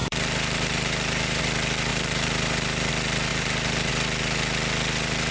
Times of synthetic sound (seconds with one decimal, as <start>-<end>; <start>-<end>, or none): 0.0-1.4; 1.9-2.9; 3.3-3.9